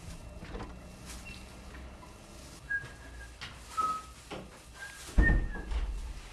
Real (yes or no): yes